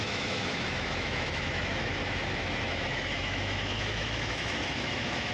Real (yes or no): no